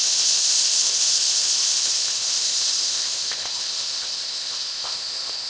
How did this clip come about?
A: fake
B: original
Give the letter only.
A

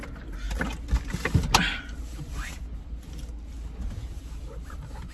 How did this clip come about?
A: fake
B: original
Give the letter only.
B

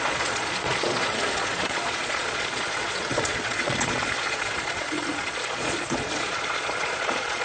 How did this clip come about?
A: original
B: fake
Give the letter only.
B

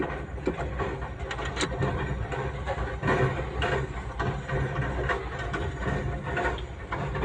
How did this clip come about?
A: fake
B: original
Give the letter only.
B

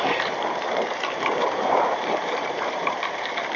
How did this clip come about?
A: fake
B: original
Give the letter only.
A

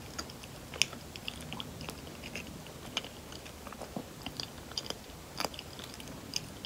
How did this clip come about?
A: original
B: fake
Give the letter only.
A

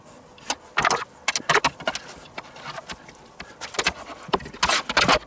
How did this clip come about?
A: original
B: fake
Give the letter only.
A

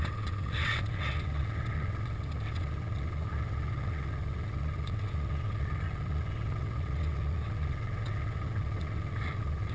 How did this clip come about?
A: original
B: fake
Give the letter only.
B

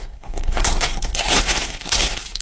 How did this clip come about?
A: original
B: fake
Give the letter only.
B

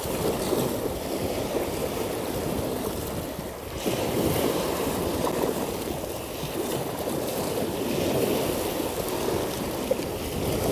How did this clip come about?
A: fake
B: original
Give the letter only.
B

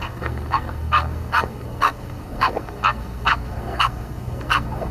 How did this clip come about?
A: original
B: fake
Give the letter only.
B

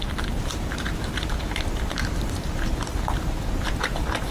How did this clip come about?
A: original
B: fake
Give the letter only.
B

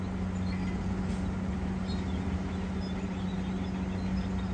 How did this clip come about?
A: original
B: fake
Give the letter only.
A